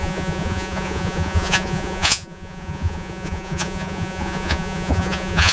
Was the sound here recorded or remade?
remade